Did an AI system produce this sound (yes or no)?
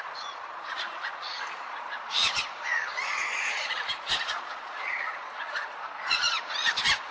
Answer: yes